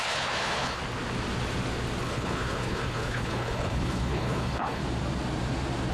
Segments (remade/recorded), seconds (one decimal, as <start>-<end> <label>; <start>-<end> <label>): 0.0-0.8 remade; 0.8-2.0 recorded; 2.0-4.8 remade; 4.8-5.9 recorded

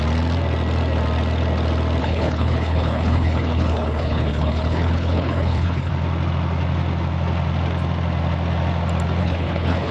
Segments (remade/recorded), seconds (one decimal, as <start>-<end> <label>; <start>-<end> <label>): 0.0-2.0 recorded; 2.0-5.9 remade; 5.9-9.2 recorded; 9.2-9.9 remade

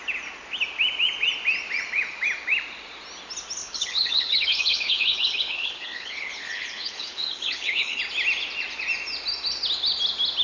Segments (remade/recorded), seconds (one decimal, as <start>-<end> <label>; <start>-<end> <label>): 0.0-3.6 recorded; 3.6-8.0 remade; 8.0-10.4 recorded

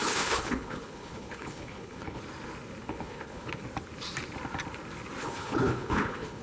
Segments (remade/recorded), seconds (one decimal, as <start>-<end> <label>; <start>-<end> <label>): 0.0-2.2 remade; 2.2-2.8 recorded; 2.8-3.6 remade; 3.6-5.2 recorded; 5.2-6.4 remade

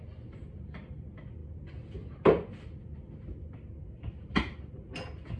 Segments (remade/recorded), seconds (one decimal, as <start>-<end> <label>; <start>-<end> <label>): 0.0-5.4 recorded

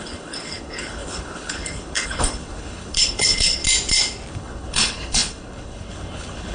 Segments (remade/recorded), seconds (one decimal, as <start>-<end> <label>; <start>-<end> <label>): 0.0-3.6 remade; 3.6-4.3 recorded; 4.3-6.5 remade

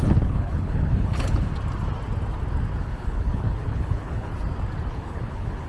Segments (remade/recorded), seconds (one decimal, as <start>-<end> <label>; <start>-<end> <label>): 0.0-1.5 remade; 1.5-2.8 recorded; 2.8-4.3 remade; 4.3-4.9 recorded; 4.9-5.7 remade

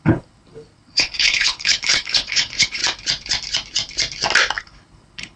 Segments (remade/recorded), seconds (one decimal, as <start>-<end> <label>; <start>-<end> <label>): 0.0-2.8 remade; 2.8-4.6 recorded; 4.6-5.4 remade